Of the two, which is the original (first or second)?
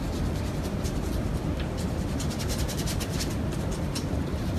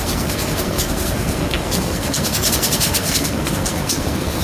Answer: first